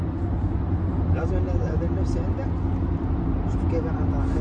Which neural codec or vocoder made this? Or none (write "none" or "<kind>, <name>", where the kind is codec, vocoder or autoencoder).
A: none